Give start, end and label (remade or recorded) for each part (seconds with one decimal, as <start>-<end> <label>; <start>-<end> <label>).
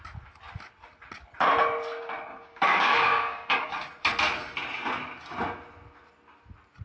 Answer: 0.0-2.3 recorded; 2.3-3.7 remade; 3.7-6.8 recorded